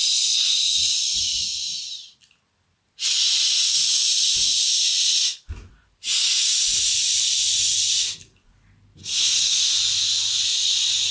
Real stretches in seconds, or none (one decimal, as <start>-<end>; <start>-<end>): 0.0-9.0; 9.7-11.1

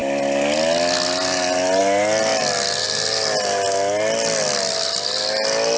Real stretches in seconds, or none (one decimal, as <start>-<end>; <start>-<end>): 0.0-5.8

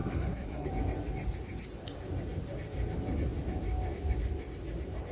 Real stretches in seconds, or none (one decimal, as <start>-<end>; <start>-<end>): 0.7-5.1

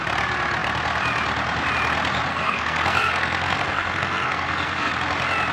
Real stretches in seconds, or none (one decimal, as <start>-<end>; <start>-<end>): 0.0-2.3; 4.9-5.5

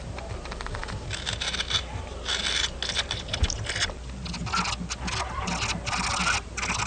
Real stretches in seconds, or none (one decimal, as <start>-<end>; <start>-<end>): 0.0-6.9

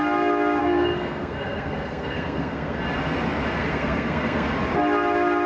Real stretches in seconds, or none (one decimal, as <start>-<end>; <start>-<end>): 0.0-0.6; 2.8-3.6; 4.5-5.5

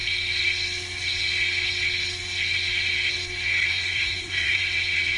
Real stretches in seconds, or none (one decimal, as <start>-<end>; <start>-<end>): 0.0-3.7; 4.6-5.2